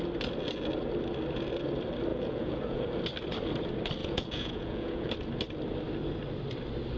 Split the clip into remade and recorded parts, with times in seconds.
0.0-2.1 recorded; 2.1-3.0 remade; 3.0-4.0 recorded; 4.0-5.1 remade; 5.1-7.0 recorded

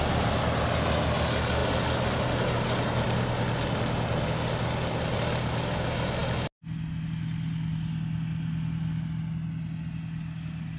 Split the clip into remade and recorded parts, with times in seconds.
0.0-10.8 recorded

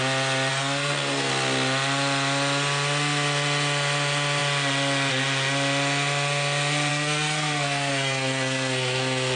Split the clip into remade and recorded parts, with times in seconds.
0.0-0.5 recorded; 0.5-1.3 remade; 1.3-6.9 recorded; 6.9-9.4 remade

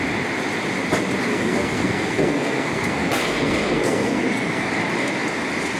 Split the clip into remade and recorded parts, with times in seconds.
0.0-1.3 recorded; 1.3-4.7 remade; 4.7-5.8 recorded

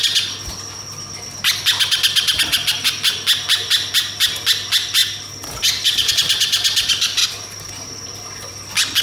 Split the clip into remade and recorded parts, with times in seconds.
0.0-7.2 recorded; 7.2-7.9 remade; 7.9-9.0 recorded

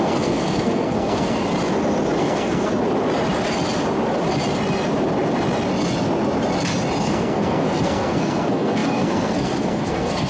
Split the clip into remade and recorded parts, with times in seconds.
0.0-1.4 remade; 1.4-2.2 recorded; 2.2-2.7 remade; 2.7-7.0 recorded; 7.0-10.3 remade

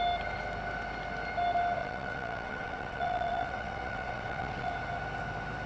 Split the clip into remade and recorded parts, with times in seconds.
0.0-1.8 recorded; 1.8-4.7 remade; 4.7-5.7 recorded